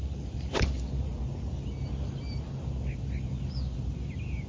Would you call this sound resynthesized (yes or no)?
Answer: no